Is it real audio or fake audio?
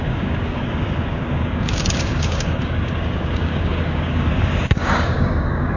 fake